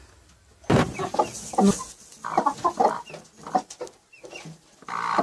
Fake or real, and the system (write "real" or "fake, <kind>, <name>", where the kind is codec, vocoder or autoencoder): real